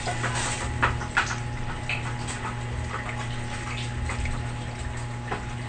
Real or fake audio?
real